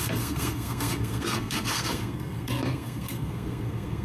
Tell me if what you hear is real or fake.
fake